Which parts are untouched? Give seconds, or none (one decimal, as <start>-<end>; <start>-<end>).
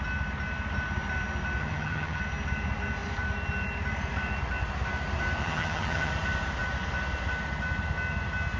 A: 0.0-1.6; 2.2-5.4; 6.1-8.6